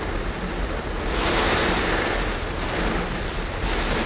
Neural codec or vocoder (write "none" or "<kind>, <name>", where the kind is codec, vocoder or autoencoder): none